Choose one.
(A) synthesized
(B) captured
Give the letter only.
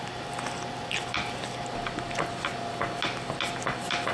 B